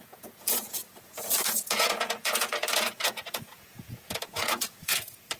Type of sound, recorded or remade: remade